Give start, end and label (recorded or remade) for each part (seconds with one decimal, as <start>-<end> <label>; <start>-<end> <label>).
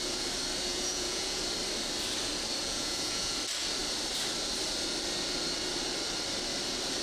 0.0-0.7 recorded; 0.7-1.4 remade; 1.4-2.6 recorded; 2.6-3.4 remade; 3.4-7.0 recorded